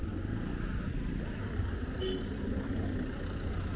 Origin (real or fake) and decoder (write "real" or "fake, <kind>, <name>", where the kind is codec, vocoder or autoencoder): real